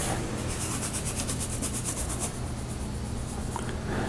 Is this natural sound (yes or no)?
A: yes